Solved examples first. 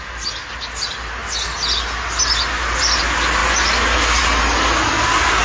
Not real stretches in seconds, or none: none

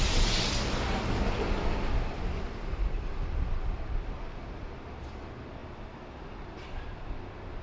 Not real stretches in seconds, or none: none

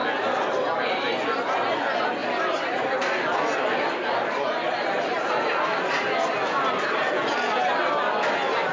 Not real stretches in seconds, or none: 2.2-5.6